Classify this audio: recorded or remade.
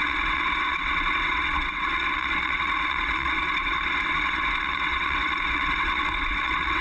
remade